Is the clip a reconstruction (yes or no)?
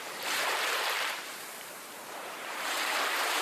yes